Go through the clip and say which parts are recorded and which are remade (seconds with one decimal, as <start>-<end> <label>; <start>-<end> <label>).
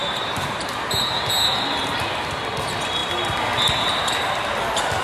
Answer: 0.0-1.0 remade; 1.0-5.0 recorded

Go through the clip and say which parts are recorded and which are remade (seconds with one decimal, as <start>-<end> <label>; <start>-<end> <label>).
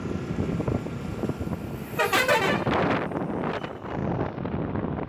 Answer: 0.0-5.1 recorded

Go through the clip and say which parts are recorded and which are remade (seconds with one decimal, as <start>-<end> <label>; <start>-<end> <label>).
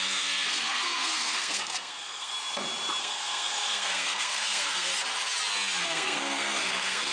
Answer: 0.0-2.3 remade; 2.3-3.0 recorded; 3.0-4.9 remade; 4.9-5.8 recorded; 5.8-7.1 remade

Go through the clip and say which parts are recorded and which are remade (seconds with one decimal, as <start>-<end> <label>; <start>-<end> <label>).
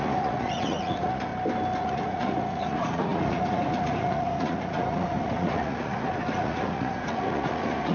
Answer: 0.0-1.3 remade; 1.3-1.8 recorded; 1.8-7.9 remade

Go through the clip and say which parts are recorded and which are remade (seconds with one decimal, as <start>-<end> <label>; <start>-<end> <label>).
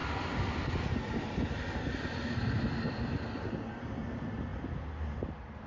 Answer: 0.0-3.4 remade; 3.4-5.7 recorded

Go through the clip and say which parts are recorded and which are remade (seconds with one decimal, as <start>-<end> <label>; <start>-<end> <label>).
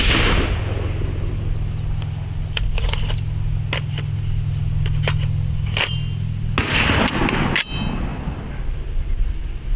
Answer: 0.0-9.8 recorded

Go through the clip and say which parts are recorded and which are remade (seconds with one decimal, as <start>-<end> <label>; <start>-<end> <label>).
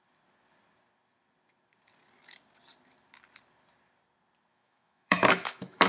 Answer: 0.0-4.5 recorded; 4.5-5.9 remade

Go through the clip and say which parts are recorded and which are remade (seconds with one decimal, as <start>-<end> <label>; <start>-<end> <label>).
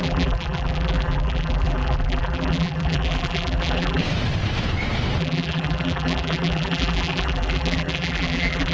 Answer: 0.0-4.0 remade; 4.0-5.2 recorded; 5.2-8.7 remade